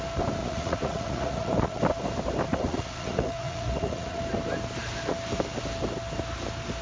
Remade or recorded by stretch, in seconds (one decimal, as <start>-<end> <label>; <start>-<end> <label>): 0.0-0.4 recorded; 0.4-1.8 remade; 1.8-2.5 recorded; 2.5-4.2 remade; 4.2-6.8 recorded